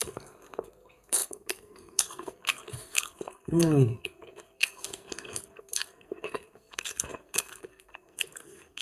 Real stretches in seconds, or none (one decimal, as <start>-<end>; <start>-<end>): none